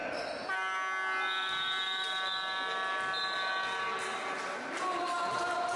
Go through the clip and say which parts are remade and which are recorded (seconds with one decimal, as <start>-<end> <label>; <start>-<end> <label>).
0.0-5.8 recorded